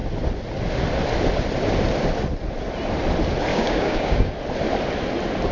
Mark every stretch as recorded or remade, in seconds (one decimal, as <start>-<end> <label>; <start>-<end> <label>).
0.0-3.5 recorded; 3.5-4.3 remade; 4.3-5.5 recorded